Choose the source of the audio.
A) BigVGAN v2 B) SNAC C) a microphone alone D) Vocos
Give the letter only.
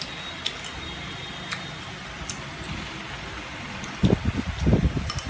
C